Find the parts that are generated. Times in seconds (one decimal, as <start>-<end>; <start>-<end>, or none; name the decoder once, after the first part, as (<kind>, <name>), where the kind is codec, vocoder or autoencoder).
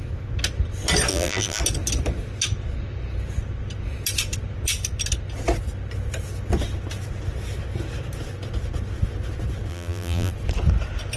1.1-1.6 (vocoder, BigVGAN v2); 9.7-10.3